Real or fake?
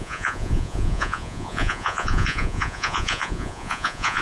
fake